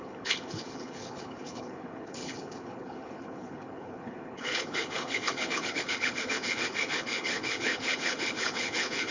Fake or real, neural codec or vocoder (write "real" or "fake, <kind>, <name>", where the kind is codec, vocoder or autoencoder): fake, codec, HILCodec